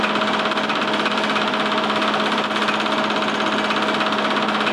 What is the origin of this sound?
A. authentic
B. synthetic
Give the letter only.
A